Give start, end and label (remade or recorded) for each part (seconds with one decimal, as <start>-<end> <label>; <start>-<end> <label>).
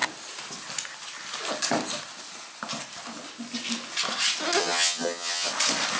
0.0-4.6 recorded; 4.6-5.5 remade; 5.5-6.0 recorded